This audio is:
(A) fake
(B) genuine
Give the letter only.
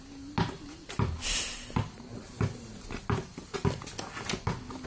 B